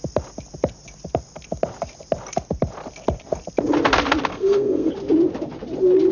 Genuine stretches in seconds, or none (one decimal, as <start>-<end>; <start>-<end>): 0.0-4.3; 4.9-6.1